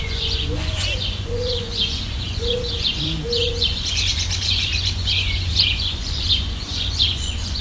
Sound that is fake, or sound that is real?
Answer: fake